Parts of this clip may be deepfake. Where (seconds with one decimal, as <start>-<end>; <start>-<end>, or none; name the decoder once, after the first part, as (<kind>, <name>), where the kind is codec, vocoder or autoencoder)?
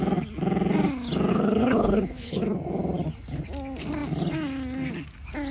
1.3-2.4 (codec, HILCodec)